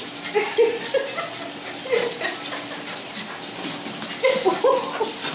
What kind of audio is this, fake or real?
real